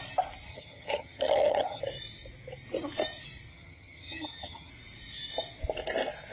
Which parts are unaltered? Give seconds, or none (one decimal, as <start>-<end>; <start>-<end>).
0.0-0.5; 1.8-3.5; 4.7-6.3